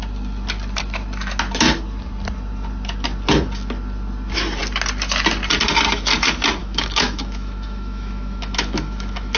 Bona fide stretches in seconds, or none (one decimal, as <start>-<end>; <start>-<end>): 0.0-6.6